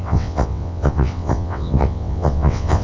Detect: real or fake fake